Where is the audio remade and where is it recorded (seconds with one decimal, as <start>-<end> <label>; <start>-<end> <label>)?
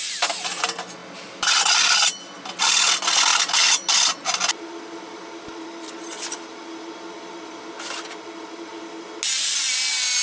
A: 0.0-10.2 recorded